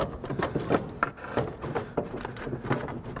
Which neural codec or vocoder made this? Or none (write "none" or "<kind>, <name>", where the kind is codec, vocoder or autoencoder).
none